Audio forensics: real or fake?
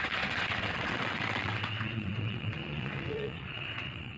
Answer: fake